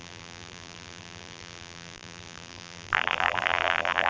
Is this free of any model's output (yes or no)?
no